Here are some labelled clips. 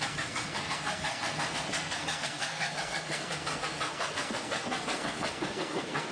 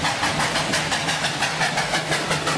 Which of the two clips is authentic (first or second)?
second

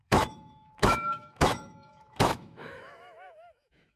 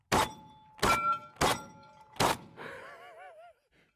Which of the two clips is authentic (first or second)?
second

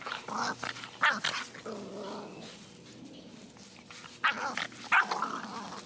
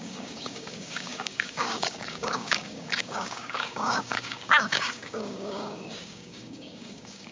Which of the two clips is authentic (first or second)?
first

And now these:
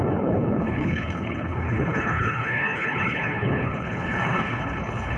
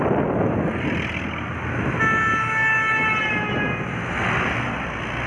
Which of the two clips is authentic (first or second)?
second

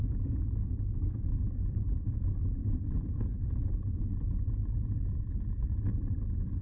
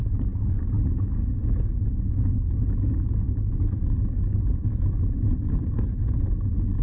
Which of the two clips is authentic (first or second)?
second